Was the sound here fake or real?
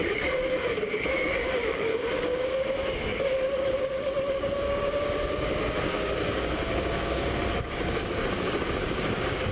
fake